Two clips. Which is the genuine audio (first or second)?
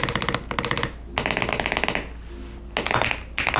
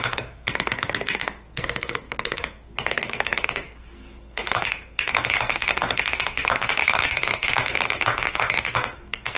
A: first